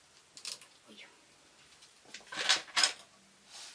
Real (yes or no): yes